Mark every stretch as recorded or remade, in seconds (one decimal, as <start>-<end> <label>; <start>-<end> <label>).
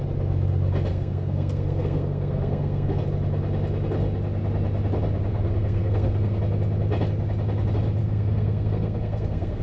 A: 0.0-0.9 recorded; 0.9-3.0 remade; 3.0-5.3 recorded; 5.3-6.4 remade; 6.4-8.0 recorded; 8.0-9.6 remade